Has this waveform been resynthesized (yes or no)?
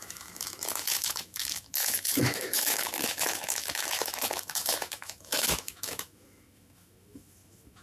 yes